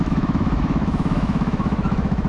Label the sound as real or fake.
fake